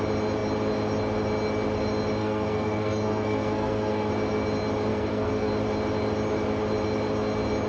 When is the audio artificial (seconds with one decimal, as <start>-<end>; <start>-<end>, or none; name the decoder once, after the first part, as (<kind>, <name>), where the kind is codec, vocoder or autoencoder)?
2.2-4.1 (codec, SNAC); 4.9-5.5